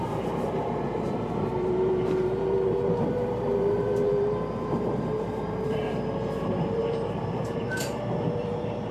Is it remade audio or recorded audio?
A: remade